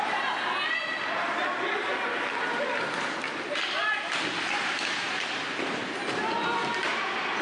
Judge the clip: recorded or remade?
recorded